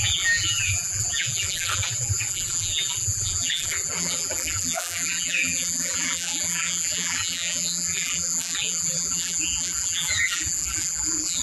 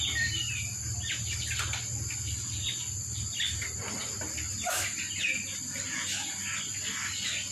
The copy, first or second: first